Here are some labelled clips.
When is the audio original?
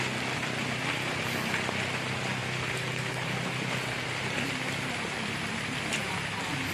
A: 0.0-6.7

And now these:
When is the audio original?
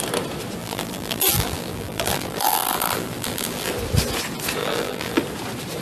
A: 0.0-0.6; 3.7-4.6; 5.2-5.8